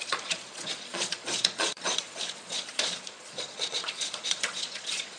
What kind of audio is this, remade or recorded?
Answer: remade